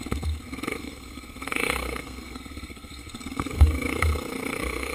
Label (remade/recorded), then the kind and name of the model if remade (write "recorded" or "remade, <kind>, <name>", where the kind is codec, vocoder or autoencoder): remade, codec, SNAC